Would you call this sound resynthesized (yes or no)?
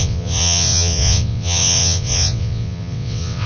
yes